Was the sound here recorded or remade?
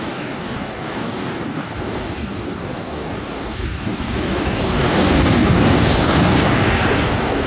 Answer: remade